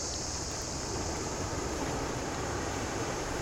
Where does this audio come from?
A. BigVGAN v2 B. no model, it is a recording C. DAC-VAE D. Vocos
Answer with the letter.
A